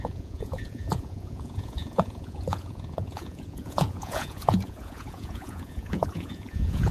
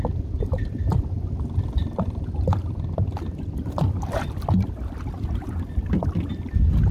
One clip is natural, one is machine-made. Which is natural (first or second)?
second